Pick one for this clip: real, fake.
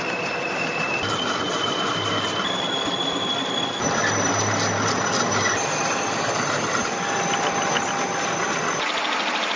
real